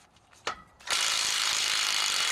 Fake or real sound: fake